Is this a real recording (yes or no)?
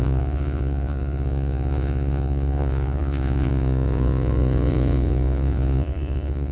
no